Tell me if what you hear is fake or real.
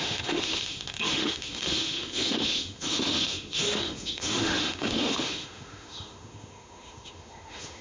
fake